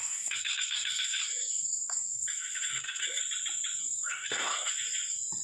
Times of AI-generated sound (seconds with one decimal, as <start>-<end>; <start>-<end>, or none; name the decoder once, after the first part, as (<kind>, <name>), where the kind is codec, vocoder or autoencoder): 0.0-3.2 (codec, SNAC); 3.8-4.7

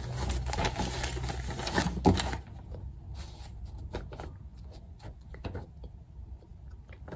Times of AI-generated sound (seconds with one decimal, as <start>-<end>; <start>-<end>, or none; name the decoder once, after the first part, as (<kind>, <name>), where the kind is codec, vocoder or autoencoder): 4.5-5.4 (vocoder, Vocos)